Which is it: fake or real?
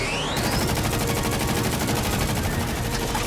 real